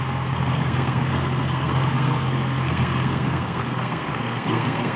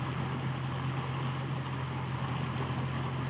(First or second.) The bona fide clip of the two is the second